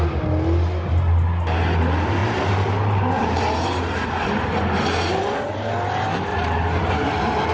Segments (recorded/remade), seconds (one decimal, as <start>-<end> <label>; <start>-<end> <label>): 0.0-2.2 recorded; 2.2-5.7 remade; 5.7-6.3 recorded; 6.3-6.9 remade; 6.9-7.5 recorded